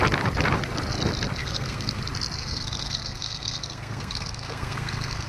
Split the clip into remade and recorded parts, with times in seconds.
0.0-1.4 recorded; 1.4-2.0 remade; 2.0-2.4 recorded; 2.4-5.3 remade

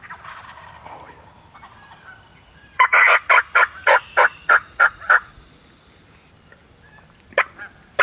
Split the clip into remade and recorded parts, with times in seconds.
0.0-2.3 recorded; 2.3-5.3 remade; 5.3-8.0 recorded